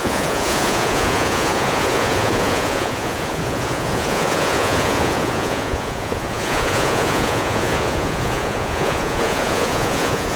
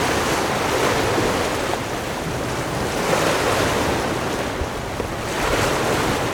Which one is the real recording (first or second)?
second